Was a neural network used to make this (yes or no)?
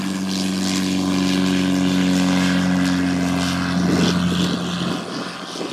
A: no